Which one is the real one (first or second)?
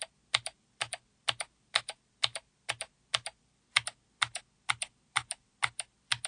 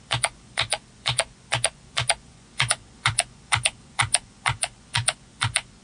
first